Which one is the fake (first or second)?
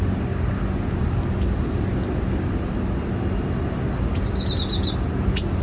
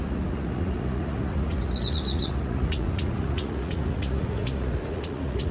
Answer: second